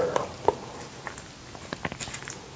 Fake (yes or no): no